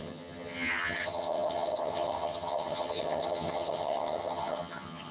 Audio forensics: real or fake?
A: fake